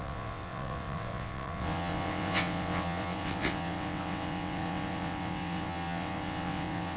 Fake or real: fake